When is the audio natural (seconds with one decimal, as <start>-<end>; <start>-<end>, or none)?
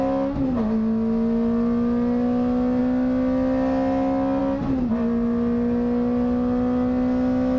0.0-7.6